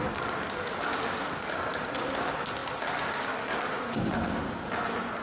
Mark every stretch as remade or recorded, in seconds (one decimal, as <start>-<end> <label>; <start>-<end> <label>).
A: 0.0-5.2 recorded